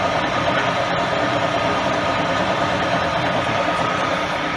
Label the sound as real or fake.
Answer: real